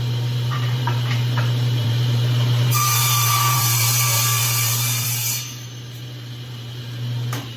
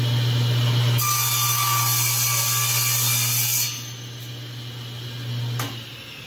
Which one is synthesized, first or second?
first